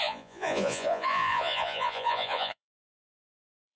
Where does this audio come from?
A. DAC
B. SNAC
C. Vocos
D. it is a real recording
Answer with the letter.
C